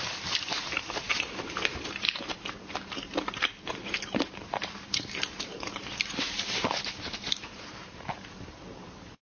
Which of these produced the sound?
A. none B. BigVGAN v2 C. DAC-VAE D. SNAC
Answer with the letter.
B